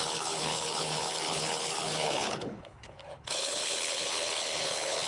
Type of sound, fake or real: fake